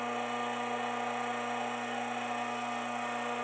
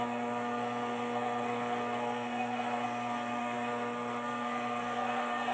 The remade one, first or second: second